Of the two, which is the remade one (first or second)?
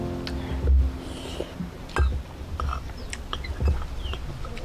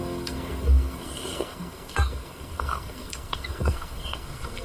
second